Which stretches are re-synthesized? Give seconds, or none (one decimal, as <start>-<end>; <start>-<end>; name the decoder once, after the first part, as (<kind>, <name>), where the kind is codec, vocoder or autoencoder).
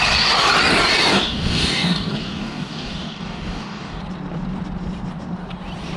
1.1-4.0 (codec, DAC)